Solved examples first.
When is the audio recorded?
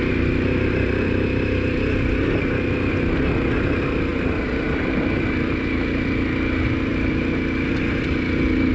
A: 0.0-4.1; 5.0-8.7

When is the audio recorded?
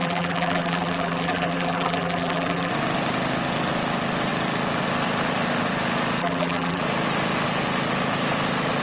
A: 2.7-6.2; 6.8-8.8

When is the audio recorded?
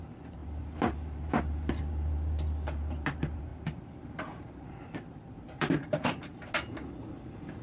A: 0.0-3.5; 6.5-7.6